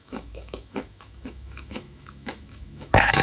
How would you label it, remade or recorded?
remade